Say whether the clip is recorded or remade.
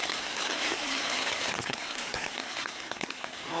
remade